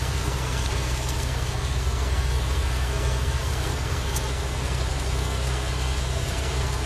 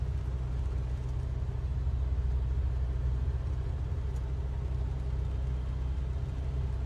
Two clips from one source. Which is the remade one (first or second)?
first